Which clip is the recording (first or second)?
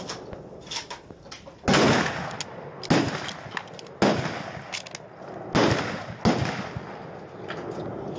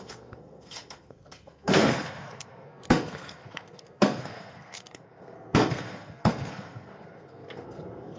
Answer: first